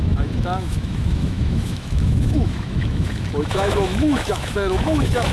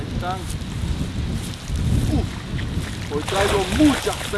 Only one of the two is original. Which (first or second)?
second